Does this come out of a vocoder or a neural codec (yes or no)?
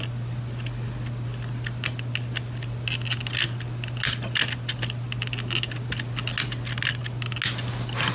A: no